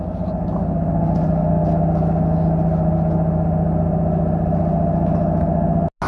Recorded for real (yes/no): yes